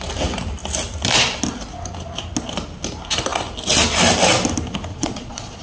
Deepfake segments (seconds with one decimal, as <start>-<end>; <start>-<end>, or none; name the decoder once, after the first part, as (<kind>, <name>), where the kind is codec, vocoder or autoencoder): 4.9-5.6 (vocoder, Vocos)